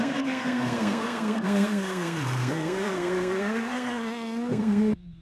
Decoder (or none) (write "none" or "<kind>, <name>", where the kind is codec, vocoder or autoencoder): codec, SNAC